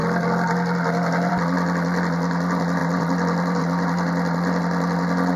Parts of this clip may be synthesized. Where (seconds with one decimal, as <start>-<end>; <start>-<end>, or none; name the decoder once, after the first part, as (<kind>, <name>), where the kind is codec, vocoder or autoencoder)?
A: 2.8-3.6 (vocoder, BigVGAN v2)